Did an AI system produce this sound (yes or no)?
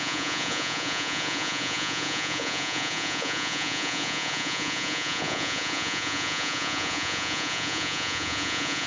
yes